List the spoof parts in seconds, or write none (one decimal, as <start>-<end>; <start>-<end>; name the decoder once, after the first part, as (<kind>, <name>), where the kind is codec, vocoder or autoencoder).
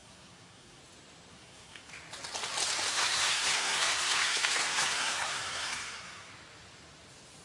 0.0-0.8 (codec, SNAC); 1.3-1.9; 2.9-6.3